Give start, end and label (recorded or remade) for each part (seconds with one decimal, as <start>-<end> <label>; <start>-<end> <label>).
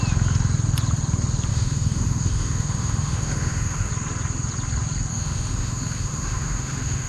0.0-1.5 recorded; 1.5-3.9 remade; 3.9-5.1 recorded; 5.1-7.1 remade